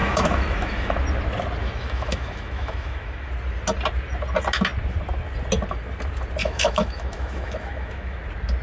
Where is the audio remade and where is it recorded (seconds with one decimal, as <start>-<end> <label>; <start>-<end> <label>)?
0.0-0.9 remade; 0.9-1.6 recorded; 1.6-3.3 remade; 3.3-6.4 recorded; 6.4-8.2 remade; 8.2-8.6 recorded